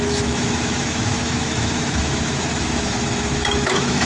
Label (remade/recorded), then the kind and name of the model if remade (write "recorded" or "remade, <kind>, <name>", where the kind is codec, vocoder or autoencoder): remade, autoencoder, DAC-VAE